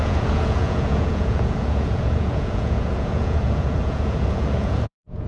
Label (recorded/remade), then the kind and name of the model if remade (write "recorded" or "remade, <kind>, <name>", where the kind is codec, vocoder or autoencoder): remade, vocoder, Vocos